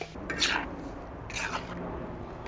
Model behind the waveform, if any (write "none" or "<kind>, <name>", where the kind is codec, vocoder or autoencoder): none